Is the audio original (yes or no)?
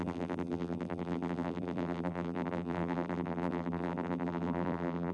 no